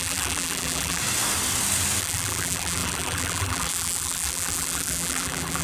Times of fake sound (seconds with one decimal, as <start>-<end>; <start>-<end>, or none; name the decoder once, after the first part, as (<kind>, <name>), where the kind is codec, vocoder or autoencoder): 0.0-1.0 (vocoder, BigVGAN v2); 2.0-5.6